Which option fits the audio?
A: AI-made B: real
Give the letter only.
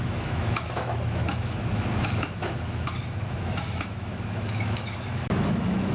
A